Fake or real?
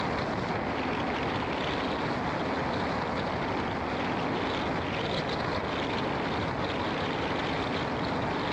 real